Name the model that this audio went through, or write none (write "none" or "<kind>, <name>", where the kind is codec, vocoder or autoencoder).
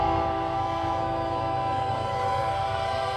codec, SNAC